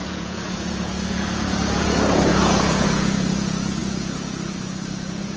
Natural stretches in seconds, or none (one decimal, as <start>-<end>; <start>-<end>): none